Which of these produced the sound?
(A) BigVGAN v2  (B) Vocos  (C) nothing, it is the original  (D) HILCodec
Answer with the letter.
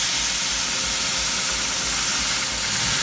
C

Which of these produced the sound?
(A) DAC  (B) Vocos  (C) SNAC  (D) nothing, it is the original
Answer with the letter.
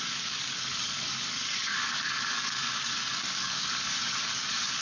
A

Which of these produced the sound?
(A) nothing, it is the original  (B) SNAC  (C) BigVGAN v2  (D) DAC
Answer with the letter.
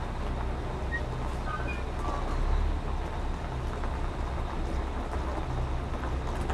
A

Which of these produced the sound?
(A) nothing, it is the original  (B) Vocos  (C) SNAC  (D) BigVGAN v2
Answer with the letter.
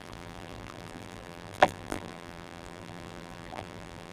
D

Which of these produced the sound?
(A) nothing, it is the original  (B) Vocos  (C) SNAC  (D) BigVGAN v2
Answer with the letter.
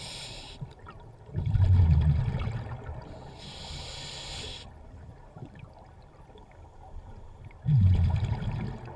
A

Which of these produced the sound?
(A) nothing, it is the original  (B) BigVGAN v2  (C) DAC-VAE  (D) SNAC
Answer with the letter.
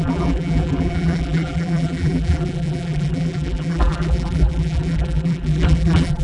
B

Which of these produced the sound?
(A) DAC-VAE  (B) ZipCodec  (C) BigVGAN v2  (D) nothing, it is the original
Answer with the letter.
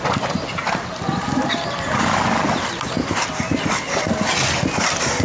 D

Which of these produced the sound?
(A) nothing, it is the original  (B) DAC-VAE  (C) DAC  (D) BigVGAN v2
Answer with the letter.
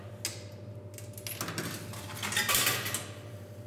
A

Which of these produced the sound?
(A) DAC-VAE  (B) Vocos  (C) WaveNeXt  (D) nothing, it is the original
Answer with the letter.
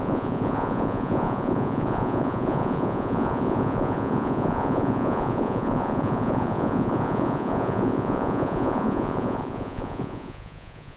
B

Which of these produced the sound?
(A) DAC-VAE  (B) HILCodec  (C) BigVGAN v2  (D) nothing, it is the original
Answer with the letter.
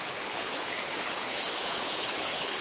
B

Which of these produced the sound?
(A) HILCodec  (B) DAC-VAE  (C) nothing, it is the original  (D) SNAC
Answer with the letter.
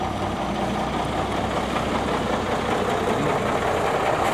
C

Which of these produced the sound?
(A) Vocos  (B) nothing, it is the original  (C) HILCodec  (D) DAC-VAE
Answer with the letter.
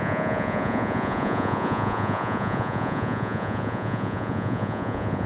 A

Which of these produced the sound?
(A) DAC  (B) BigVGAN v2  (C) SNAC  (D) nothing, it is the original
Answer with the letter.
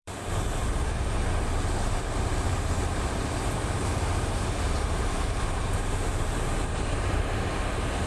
B